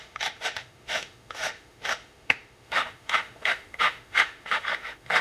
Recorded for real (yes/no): no